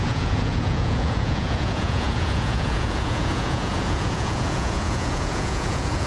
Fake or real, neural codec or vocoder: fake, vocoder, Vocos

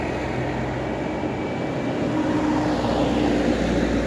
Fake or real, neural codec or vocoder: real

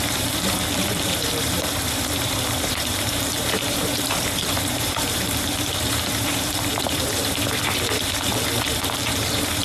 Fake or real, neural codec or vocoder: fake, vocoder, BigVGAN v2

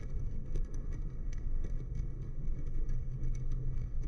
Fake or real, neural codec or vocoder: fake, codec, SNAC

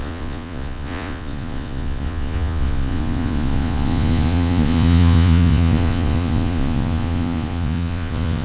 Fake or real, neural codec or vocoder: fake, vocoder, Vocos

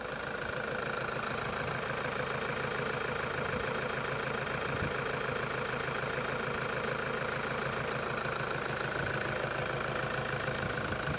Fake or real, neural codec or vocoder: real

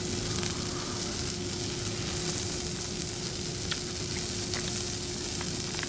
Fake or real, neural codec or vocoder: real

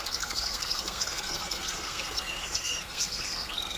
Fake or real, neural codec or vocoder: fake, codec, SNAC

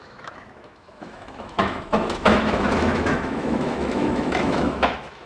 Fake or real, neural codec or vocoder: fake, autoencoder, DAC-VAE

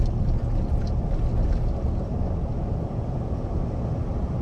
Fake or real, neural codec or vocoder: real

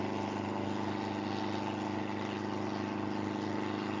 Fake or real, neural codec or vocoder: real